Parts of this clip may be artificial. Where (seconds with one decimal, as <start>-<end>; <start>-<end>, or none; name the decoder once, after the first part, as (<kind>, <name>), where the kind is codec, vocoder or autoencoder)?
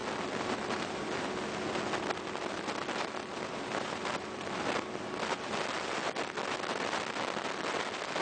none